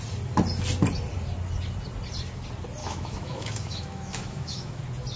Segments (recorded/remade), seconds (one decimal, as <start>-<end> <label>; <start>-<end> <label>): 0.0-2.8 recorded; 2.8-4.8 remade; 4.8-5.2 recorded